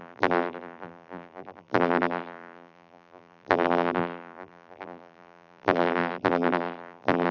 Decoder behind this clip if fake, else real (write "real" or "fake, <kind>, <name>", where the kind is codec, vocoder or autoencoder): fake, vocoder, BigVGAN v2